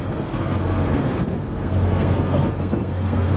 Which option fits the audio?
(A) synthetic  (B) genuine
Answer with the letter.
A